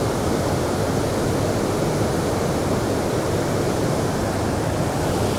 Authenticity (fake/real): real